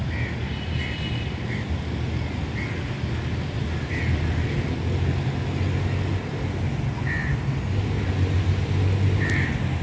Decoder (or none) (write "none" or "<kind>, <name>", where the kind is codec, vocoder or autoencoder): none